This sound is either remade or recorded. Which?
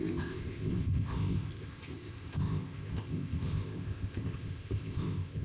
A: remade